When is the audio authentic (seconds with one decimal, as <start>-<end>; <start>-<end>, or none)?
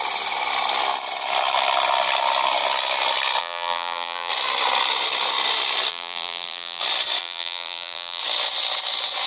0.0-3.4; 4.3-5.9; 6.8-7.2; 8.2-9.3